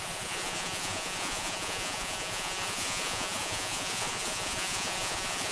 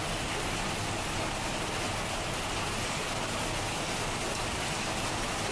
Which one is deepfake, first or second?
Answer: first